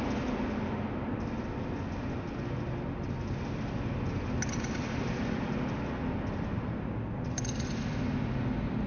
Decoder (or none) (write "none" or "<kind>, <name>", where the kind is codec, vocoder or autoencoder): none